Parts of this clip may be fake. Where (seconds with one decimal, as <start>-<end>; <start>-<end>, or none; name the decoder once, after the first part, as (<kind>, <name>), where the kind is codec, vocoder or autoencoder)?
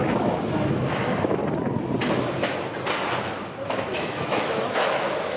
0.0-1.4 (autoencoder, DAC-VAE); 2.1-2.7; 3.2-5.4